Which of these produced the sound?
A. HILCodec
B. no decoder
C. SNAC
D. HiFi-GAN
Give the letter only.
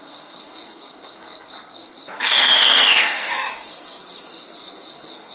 C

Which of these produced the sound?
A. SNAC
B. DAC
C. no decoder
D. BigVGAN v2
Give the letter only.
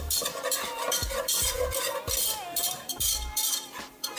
D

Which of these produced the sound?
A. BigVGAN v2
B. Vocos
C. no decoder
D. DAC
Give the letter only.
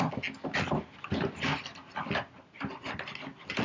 C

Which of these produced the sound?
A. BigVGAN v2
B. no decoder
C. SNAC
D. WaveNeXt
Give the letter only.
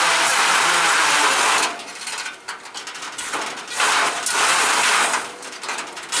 B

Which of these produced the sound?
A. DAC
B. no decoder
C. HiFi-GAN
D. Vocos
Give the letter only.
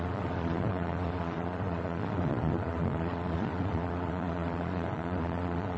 D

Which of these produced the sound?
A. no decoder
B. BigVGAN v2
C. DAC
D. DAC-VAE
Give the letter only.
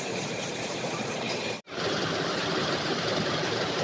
B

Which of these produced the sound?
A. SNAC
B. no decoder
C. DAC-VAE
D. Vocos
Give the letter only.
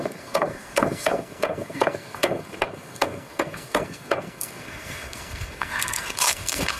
A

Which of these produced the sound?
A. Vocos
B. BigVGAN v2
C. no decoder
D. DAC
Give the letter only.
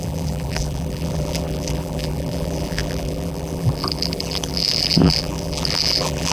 B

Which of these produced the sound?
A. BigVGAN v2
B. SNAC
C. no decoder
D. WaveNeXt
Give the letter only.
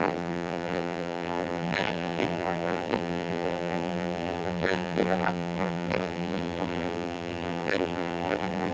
A